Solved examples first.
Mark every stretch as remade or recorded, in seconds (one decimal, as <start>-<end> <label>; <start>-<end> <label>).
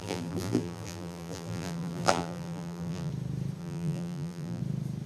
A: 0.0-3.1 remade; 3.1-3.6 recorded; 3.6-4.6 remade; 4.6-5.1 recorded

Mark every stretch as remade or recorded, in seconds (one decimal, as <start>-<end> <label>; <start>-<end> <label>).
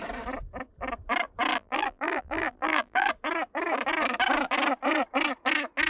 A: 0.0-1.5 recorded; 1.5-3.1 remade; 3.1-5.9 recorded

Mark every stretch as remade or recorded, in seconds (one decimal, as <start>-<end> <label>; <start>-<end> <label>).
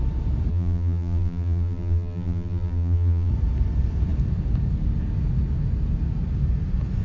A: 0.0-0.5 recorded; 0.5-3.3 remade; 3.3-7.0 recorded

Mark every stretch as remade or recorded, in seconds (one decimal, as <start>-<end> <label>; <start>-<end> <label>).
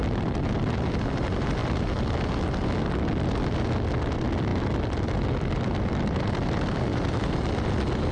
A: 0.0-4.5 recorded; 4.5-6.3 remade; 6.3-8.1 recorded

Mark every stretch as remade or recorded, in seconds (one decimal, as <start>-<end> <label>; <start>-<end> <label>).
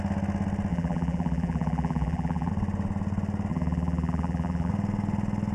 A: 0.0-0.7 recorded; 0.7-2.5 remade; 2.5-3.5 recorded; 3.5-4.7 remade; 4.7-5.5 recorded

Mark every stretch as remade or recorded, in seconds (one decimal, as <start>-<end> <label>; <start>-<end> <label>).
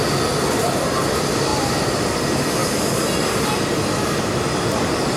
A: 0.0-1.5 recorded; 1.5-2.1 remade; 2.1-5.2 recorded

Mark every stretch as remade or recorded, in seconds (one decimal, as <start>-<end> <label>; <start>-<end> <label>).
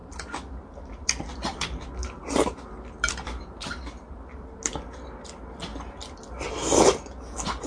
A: 0.0-4.6 remade; 4.6-7.7 recorded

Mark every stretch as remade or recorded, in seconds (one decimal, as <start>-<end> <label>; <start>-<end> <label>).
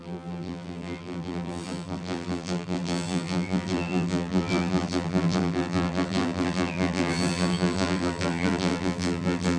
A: 0.0-9.6 remade